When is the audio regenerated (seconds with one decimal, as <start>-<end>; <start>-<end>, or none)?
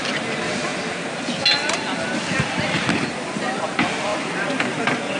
none